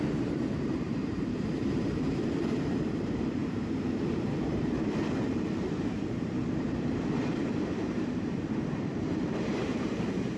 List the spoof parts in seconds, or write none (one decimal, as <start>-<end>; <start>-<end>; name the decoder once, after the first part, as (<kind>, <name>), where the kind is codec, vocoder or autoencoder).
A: 0.0-10.4 (vocoder, BigVGAN v2)